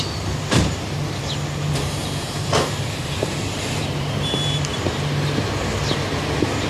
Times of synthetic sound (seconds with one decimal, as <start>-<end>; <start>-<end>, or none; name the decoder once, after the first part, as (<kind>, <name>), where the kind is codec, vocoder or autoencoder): 2.0-4.7 (vocoder, BigVGAN v2)